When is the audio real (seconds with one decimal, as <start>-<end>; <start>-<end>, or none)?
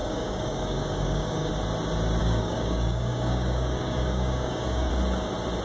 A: 1.5-2.2; 4.9-5.6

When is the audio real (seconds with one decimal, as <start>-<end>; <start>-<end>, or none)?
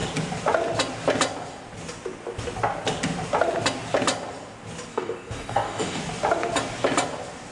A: 0.0-4.9; 6.0-7.5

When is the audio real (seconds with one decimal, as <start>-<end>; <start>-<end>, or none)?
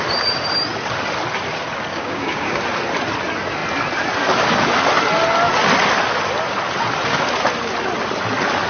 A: 0.0-1.9; 2.6-8.7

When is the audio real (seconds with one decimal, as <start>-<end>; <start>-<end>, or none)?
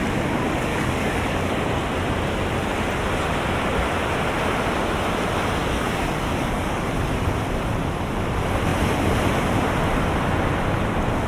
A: 0.0-0.7; 1.6-5.6; 6.8-11.3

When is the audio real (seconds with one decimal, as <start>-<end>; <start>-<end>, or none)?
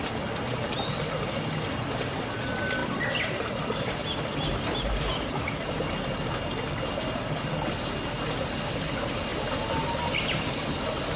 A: 0.0-11.2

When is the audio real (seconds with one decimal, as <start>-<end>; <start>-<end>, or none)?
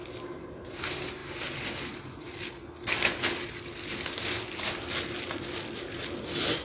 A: 0.0-6.6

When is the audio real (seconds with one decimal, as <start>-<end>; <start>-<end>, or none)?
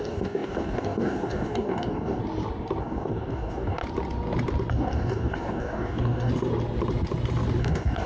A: 2.2-2.8; 3.8-4.7; 6.3-7.6